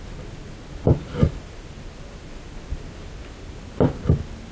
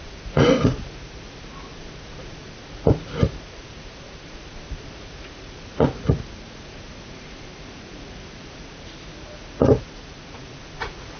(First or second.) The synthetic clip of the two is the second